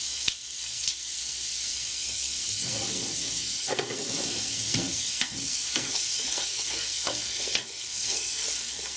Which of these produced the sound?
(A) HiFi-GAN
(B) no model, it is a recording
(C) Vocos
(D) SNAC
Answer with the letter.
D